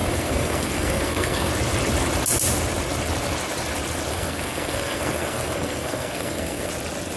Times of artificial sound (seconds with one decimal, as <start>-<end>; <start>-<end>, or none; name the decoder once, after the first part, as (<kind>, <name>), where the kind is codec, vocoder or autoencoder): 0.0-1.5 (codec, SNAC); 4.1-6.7